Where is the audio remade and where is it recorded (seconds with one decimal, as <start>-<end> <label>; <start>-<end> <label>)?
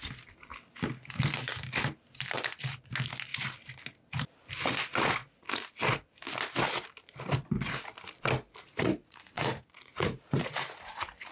0.0-8.6 recorded; 8.6-10.5 remade; 10.5-11.3 recorded